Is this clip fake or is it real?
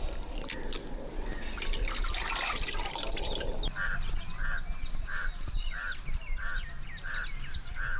fake